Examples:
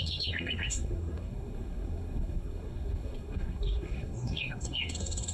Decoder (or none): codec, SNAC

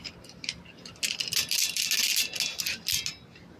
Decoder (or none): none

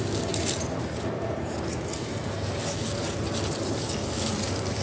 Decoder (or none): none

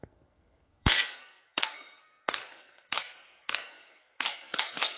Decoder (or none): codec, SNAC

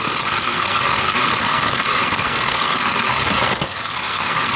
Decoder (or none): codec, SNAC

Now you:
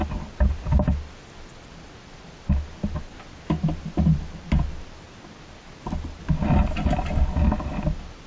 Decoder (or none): none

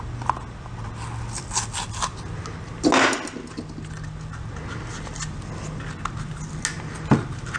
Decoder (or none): none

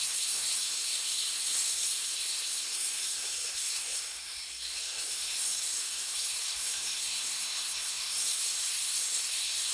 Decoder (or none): codec, SNAC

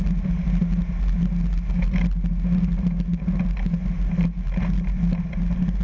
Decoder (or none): none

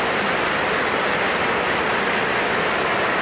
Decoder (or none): none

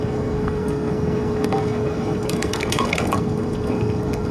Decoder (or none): codec, SNAC